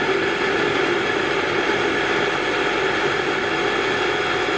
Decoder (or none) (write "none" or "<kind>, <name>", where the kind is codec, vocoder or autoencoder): none